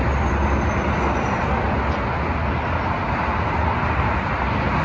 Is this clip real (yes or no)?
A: yes